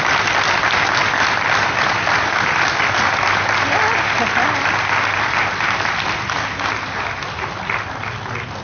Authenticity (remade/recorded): recorded